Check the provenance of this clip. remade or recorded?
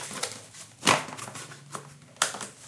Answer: recorded